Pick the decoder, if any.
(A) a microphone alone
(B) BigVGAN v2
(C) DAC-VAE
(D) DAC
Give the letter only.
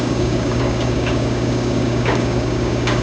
D